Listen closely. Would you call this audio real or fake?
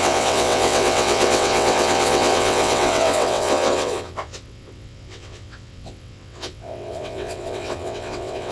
fake